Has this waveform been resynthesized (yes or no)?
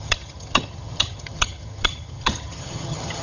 yes